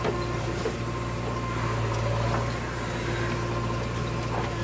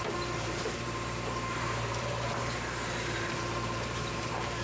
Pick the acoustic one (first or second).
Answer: first